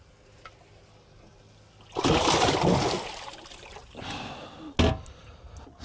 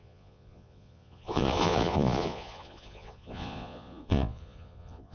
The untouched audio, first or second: first